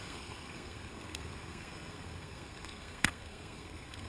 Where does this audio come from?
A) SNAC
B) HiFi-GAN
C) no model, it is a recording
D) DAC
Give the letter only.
A